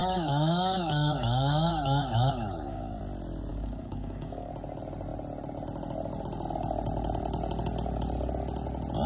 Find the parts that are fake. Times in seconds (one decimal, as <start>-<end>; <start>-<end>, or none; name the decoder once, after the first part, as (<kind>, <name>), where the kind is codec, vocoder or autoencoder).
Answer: 0.0-3.0 (codec, DAC); 3.5-4.5